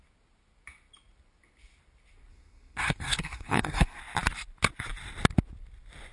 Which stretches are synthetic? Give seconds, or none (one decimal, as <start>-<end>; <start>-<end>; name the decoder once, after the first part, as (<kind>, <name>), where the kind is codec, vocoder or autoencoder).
2.3-4.0 (codec, SNAC)